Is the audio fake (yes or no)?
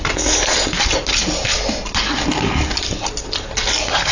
no